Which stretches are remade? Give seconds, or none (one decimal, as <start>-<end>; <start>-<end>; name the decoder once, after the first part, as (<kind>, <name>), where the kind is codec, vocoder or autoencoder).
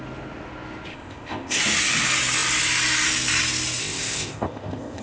0.9-1.6 (codec, ZipCodec); 3.8-5.0